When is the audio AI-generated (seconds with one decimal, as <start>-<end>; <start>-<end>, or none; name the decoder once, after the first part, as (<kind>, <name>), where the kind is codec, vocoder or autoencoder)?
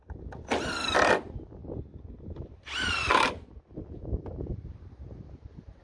none